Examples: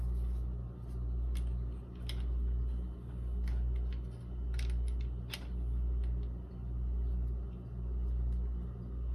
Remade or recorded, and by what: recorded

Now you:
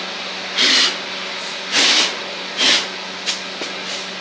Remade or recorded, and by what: recorded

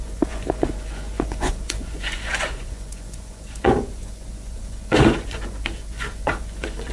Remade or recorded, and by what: remade, vocoder, Vocos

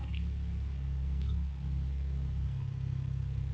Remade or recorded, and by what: remade, codec, SNAC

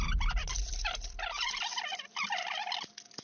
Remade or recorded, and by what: recorded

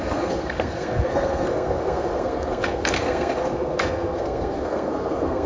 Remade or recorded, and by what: remade, codec, SNAC